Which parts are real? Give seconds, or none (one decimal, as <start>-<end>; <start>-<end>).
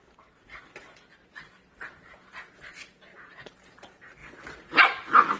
0.0-5.4